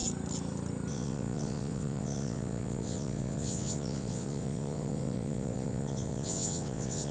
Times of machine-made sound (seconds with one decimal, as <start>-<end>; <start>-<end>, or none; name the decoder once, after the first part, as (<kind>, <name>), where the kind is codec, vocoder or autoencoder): 0.9-7.1 (vocoder, WaveNeXt)